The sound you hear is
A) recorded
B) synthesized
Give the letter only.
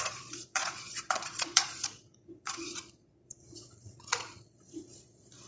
B